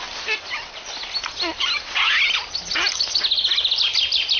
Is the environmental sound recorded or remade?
recorded